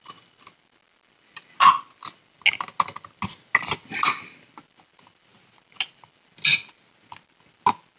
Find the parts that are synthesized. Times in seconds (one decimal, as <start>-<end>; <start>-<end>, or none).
none